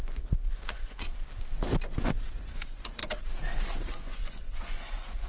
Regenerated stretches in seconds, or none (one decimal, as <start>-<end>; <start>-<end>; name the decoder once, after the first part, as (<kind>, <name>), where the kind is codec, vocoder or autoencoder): 0.0-1.1 (vocoder, Vocos); 2.0-3.0; 3.9-5.3

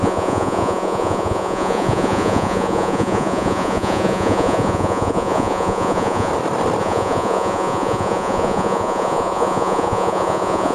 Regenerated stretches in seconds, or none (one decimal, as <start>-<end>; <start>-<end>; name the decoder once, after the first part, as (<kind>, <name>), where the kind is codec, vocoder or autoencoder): 0.0-6.3 (vocoder, Vocos); 6.8-10.7